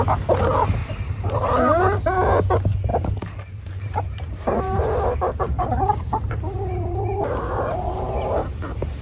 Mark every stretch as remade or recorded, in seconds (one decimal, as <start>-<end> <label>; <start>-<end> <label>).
0.0-0.8 recorded; 0.8-1.8 remade; 1.8-2.9 recorded; 2.9-8.1 remade; 8.1-9.0 recorded